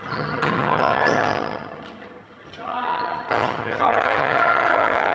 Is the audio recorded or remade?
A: remade